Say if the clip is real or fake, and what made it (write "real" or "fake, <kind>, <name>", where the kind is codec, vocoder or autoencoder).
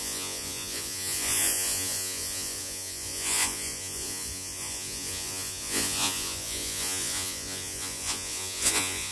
fake, vocoder, Vocos